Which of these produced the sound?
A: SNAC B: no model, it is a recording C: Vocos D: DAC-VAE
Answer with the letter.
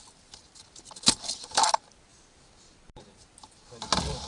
B